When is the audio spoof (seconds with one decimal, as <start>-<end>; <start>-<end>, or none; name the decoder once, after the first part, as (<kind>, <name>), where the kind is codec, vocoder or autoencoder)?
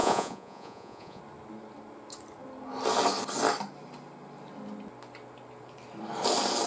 0.0-1.2 (vocoder, Vocos)